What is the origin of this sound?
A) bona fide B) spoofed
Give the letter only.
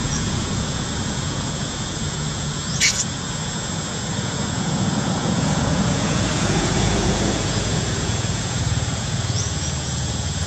B